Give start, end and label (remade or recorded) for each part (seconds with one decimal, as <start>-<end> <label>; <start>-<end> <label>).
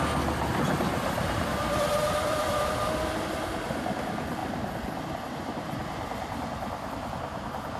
0.0-7.8 recorded